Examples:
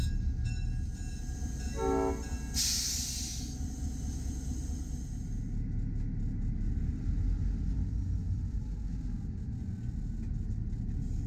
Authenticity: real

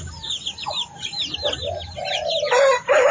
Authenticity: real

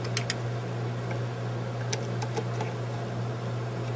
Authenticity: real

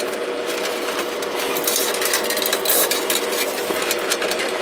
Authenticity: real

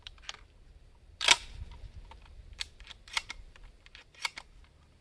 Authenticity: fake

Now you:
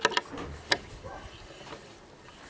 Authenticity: real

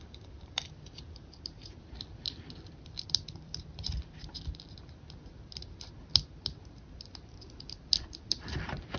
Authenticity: fake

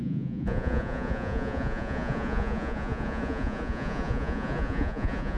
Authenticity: fake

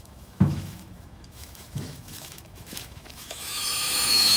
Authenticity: fake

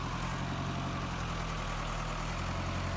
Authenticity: real